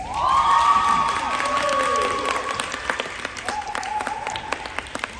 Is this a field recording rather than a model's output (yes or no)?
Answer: no